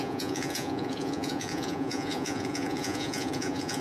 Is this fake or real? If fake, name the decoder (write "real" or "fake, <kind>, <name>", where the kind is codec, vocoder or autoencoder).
fake, vocoder, Vocos